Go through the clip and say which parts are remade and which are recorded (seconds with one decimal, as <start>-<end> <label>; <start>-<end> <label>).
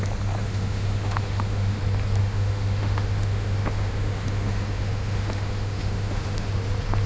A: 0.0-0.4 recorded; 0.4-1.8 remade; 1.8-2.2 recorded; 2.2-6.5 remade; 6.5-7.1 recorded